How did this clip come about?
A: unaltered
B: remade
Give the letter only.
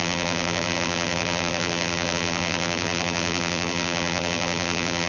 B